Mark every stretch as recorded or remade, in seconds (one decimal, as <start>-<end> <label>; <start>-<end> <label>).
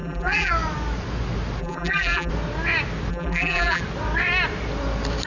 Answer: 0.0-0.5 remade; 0.5-1.6 recorded; 1.6-2.3 remade; 2.3-3.1 recorded; 3.1-3.8 remade; 3.8-5.3 recorded